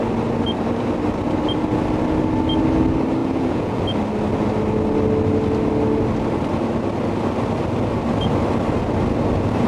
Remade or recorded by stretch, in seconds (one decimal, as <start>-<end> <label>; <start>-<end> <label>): 0.0-3.2 recorded; 3.2-3.8 remade; 3.8-9.7 recorded